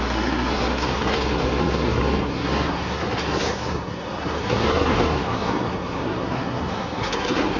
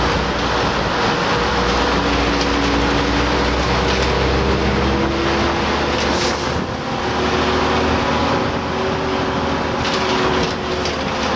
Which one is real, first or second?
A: second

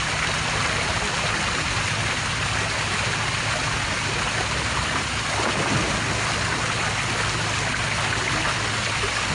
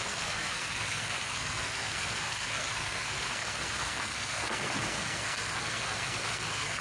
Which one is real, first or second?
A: first